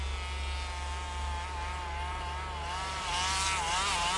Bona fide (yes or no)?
yes